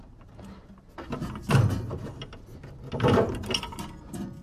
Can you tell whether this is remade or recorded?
recorded